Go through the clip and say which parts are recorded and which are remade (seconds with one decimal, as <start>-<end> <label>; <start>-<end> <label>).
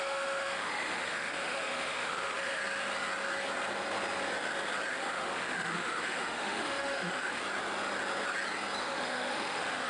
0.0-2.6 remade; 2.6-4.9 recorded; 4.9-7.4 remade; 7.4-8.8 recorded; 8.8-9.9 remade